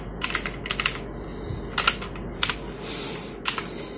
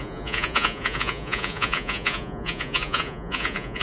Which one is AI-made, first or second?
second